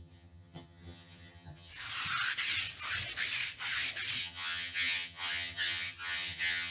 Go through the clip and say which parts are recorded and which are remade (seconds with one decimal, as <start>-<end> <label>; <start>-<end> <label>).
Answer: 0.0-1.7 remade; 1.7-4.2 recorded; 4.2-6.7 remade